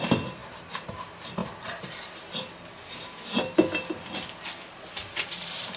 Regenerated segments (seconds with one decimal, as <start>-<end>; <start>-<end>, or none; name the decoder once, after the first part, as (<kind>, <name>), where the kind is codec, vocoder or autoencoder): 5.0-5.8 (vocoder, BigVGAN v2)